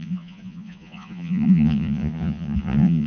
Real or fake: fake